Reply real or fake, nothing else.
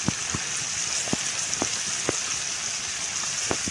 real